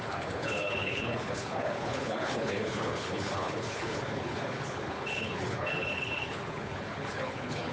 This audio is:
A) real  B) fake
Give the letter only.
B